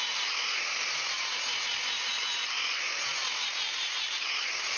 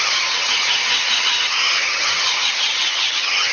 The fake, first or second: second